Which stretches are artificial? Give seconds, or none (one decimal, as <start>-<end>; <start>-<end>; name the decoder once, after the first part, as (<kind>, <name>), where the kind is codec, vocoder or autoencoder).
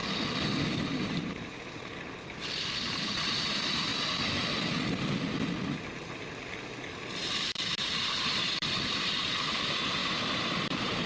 0.6-3.9 (vocoder, BigVGAN v2); 6.9-11.1